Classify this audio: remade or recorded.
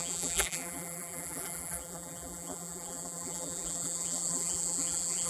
remade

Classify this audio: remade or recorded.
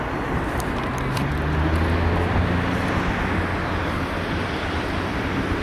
recorded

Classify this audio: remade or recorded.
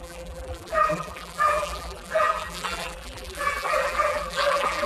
remade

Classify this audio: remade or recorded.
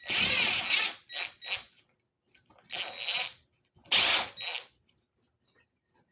recorded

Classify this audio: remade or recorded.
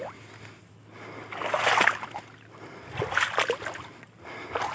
recorded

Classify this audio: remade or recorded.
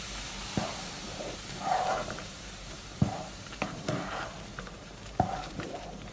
remade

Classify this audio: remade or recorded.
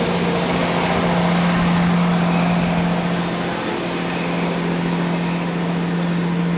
recorded